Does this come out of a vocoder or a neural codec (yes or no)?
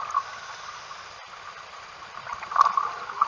no